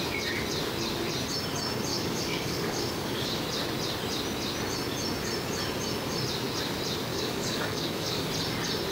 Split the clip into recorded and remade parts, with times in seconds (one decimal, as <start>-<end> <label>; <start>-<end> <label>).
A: 0.0-1.9 recorded; 1.9-3.4 remade; 3.4-7.1 recorded; 7.1-8.3 remade; 8.3-8.9 recorded